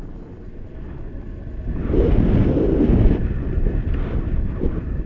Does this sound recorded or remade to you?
recorded